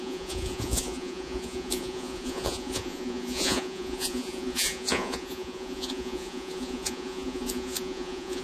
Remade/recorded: remade